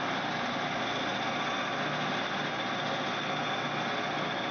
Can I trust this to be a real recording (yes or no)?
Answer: yes